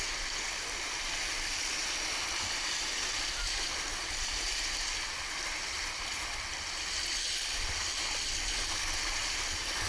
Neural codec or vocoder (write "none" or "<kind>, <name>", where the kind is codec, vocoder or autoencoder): none